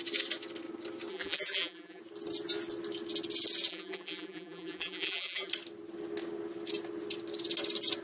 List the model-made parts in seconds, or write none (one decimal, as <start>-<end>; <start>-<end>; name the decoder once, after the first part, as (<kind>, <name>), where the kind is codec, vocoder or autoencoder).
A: 1.1-2.0 (vocoder, BigVGAN v2); 3.7-5.5